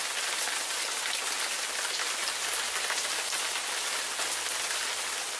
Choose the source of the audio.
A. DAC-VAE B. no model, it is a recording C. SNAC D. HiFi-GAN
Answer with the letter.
B